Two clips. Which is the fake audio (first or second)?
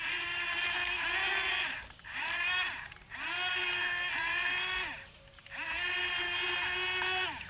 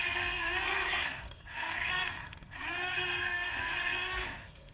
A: second